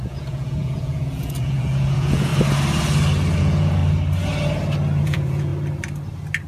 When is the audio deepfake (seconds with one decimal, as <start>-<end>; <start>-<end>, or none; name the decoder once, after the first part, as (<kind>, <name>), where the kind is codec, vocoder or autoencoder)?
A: 0.0-2.3 (vocoder, Vocos); 3.4-3.8; 5.0-5.5